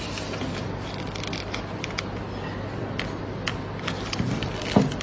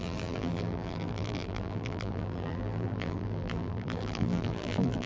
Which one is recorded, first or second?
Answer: first